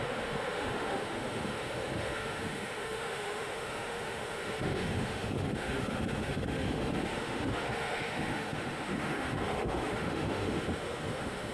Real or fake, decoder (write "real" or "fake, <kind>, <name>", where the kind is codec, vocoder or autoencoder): fake, autoencoder, DAC-VAE